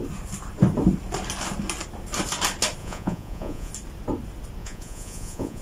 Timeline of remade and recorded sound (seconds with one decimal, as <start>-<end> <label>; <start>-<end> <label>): 0.0-2.8 recorded; 2.8-3.7 remade; 3.7-4.6 recorded; 4.6-5.6 remade